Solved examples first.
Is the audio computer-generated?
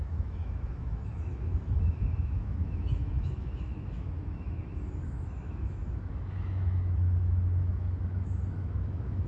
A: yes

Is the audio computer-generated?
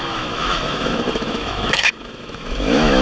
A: yes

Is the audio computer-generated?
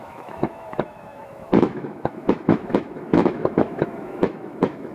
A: yes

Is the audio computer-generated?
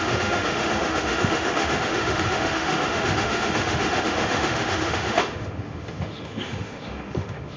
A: yes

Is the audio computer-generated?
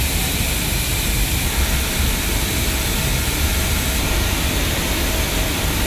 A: no